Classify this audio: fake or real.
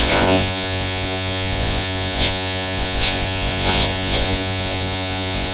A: fake